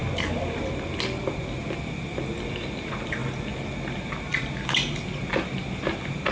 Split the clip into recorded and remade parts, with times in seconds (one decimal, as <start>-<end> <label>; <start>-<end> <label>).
0.0-6.3 recorded

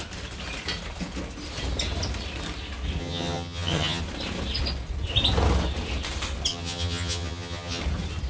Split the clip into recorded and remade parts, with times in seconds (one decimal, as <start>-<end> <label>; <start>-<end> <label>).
0.0-3.0 recorded; 3.0-4.0 remade; 4.0-6.5 recorded; 6.5-7.8 remade; 7.8-8.3 recorded

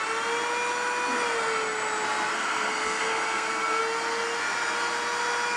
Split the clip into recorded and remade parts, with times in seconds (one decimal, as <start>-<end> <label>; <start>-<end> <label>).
0.0-2.3 recorded; 2.3-3.8 remade; 3.8-5.6 recorded

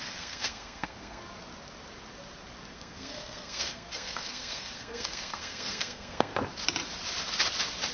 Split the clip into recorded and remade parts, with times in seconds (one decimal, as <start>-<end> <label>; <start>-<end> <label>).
0.0-1.2 remade; 1.2-2.7 recorded; 2.7-6.3 remade; 6.3-7.9 recorded

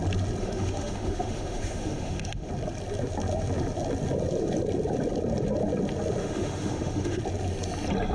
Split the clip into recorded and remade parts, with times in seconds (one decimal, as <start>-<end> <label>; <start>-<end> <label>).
0.0-0.4 recorded; 0.4-2.5 remade; 2.5-6.2 recorded; 6.2-7.2 remade; 7.2-8.1 recorded